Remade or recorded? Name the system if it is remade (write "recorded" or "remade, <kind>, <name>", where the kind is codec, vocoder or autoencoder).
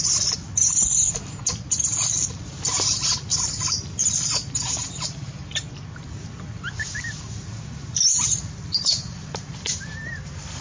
recorded